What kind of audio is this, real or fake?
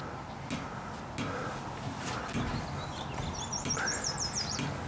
real